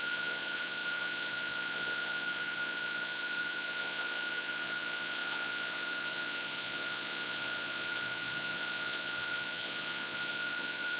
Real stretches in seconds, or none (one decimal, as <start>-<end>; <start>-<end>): none